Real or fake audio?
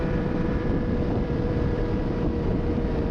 fake